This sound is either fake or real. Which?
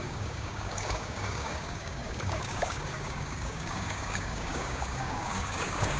fake